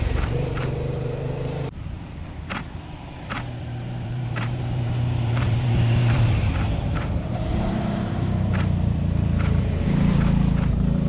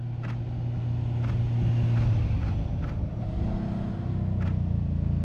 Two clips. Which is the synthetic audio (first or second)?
first